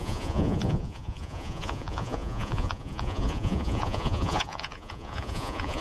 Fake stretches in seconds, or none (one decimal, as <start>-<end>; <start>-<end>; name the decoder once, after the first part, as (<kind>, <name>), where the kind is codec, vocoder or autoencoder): 0.0-5.8 (vocoder, Vocos)